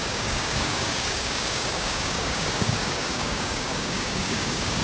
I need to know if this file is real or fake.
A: fake